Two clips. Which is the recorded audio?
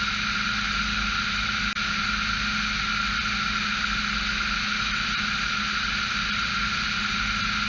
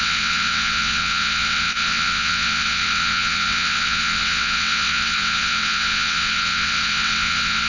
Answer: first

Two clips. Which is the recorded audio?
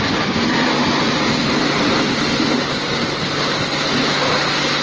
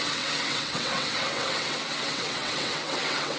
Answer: first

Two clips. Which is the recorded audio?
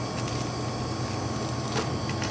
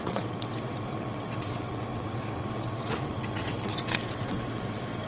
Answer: first